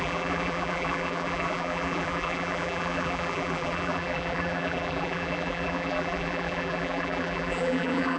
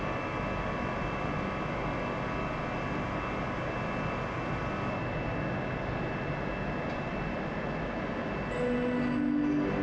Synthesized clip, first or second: first